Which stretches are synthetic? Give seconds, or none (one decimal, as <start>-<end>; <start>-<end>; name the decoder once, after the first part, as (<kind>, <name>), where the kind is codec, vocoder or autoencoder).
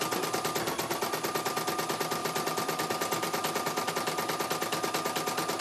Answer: 2.2-3.9 (vocoder, BigVGAN v2)